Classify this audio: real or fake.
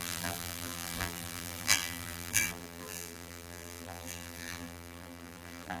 fake